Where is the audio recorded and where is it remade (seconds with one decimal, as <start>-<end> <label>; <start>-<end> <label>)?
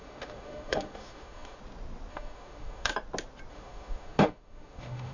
0.0-1.6 remade; 1.6-2.1 recorded; 2.1-2.9 remade; 2.9-3.5 recorded; 3.5-5.1 remade